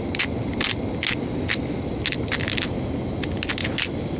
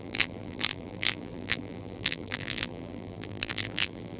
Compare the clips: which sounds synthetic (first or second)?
second